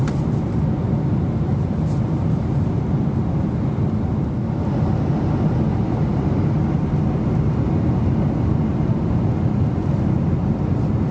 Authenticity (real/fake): real